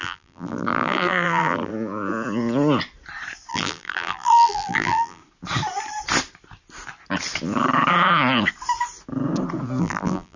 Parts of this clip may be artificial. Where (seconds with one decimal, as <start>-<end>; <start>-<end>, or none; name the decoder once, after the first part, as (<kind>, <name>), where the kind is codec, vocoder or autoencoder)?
0.0-1.7 (vocoder, BigVGAN v2); 3.5-5.2; 9.8-10.4